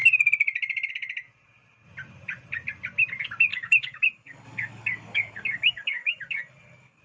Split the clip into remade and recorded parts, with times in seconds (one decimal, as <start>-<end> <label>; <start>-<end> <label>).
0.0-3.5 recorded; 3.5-7.0 remade